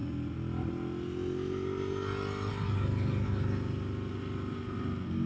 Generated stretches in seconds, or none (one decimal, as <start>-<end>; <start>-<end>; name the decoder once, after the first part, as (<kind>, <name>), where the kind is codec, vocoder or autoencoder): none